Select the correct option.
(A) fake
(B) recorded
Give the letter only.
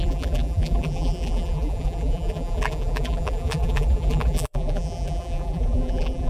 A